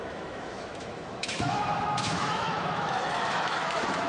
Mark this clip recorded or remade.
remade